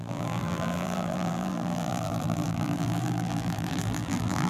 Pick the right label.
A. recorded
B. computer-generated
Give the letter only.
B